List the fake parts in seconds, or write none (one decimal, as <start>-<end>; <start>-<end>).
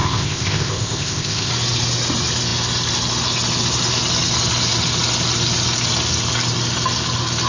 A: 0.0-1.5